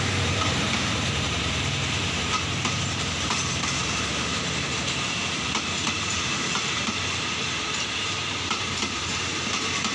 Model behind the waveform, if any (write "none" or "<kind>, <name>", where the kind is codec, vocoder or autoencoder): vocoder, BigVGAN v2